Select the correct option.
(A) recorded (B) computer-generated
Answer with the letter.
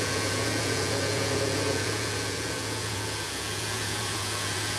B